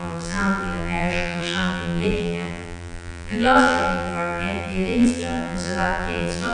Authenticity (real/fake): fake